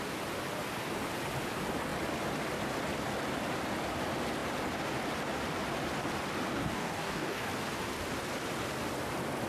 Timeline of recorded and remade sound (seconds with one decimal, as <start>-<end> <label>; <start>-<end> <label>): 0.0-6.5 recorded; 6.5-7.5 remade; 7.5-9.5 recorded